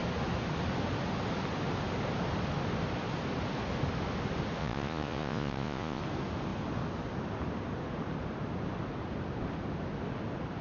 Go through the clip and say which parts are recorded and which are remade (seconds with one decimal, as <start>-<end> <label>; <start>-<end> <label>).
0.0-4.6 recorded; 4.6-6.0 remade; 6.0-10.6 recorded